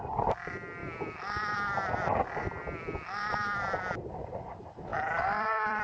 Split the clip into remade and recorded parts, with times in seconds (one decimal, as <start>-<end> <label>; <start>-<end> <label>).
0.0-0.8 recorded; 0.8-4.2 remade; 4.2-4.9 recorded; 4.9-5.8 remade